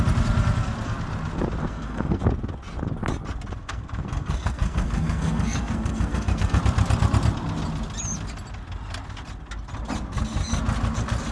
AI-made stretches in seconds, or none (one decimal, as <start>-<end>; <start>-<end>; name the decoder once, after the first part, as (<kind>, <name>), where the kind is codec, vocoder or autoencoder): 1.6-2.2 (codec, SNAC); 3.6-6.6